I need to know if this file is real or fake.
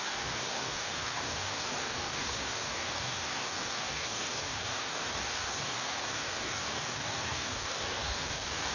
fake